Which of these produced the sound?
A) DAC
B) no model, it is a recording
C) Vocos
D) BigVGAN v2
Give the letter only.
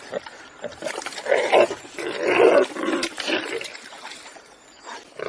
D